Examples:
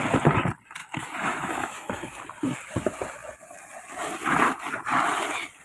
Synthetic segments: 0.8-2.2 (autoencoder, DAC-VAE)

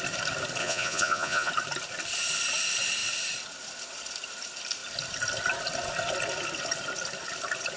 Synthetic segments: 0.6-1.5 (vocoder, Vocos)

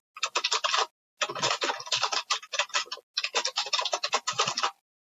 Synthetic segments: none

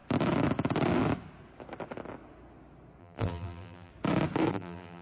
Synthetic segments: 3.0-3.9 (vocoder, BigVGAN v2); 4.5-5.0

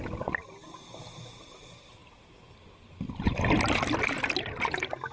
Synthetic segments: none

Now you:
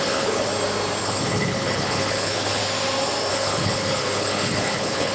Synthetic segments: 0.0-0.5 (codec, HILCodec); 1.0-2.6; 3.3-5.1

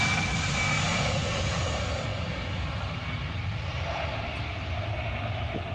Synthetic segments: 0.9-1.6 (vocoder, Vocos)

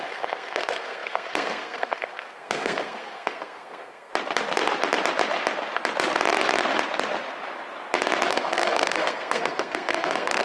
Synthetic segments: 0.0-4.1 (codec, SNAC); 8.3-10.4